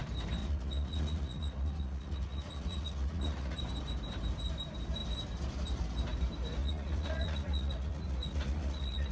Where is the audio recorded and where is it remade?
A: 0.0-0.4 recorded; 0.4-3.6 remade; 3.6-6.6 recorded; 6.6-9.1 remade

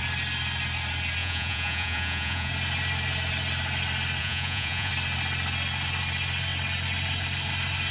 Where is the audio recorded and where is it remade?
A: 0.0-1.2 recorded; 1.2-2.5 remade; 2.5-4.2 recorded; 4.2-4.9 remade; 4.9-7.9 recorded